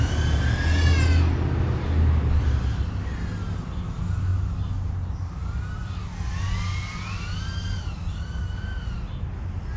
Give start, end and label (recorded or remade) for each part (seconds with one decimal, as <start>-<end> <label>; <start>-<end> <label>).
0.0-9.8 recorded